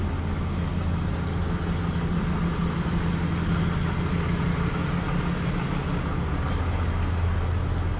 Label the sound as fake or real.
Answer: real